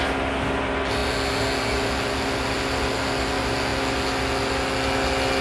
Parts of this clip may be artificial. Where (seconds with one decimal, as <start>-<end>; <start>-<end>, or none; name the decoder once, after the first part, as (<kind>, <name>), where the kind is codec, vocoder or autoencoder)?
none